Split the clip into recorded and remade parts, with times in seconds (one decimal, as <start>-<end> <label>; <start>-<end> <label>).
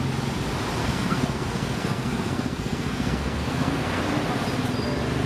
0.0-0.8 recorded; 0.8-4.0 remade; 4.0-5.3 recorded